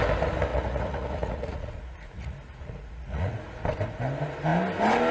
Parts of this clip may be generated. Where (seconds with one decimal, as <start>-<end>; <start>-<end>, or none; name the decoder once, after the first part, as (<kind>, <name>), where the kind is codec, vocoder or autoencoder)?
0.5-3.6 (vocoder, Vocos)